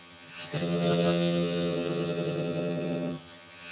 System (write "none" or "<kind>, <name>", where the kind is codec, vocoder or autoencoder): vocoder, HiFi-GAN